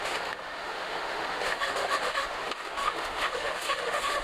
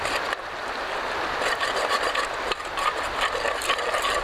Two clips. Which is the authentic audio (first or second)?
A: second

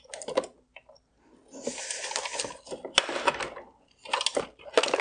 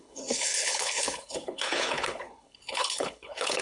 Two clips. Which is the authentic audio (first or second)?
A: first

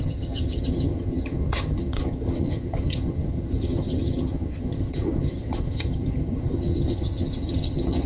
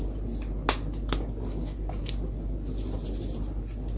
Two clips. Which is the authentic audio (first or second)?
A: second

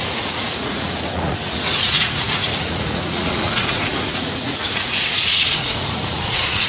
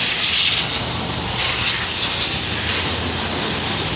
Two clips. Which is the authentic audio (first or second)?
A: second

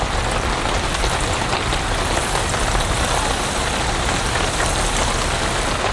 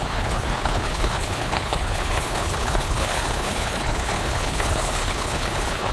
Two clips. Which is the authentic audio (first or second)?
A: first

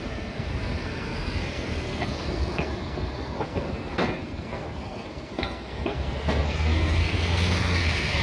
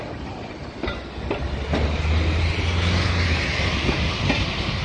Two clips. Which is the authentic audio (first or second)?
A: second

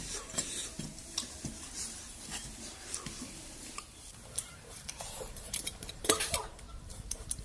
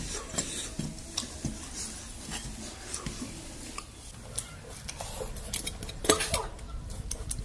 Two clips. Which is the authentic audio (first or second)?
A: second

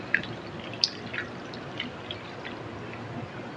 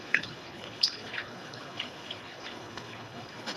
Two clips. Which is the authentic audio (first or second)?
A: first